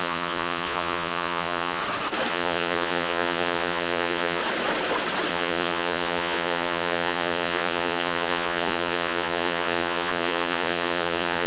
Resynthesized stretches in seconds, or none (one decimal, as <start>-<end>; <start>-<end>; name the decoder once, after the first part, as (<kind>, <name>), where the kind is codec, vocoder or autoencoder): 0.0-1.8 (vocoder, Vocos); 2.3-4.4; 5.3-11.5